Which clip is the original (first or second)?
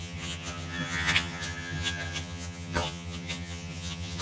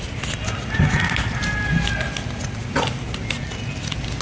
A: second